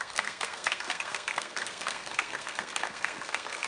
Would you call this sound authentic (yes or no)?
no